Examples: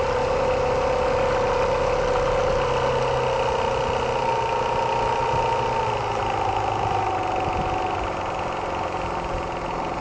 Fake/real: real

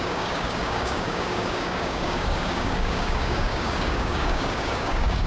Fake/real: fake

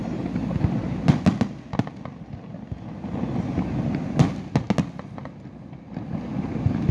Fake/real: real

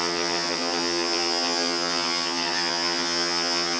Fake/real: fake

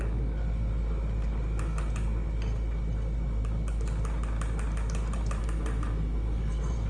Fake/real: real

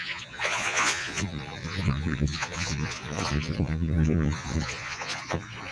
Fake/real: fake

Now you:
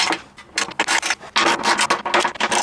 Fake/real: real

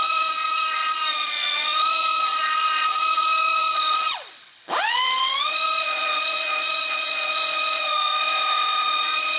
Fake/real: fake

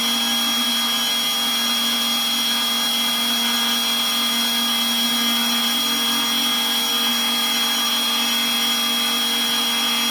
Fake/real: real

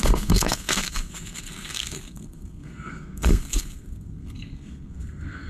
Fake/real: fake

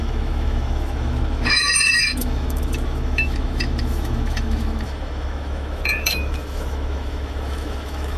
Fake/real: fake